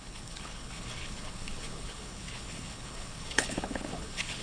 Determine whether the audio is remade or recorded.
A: remade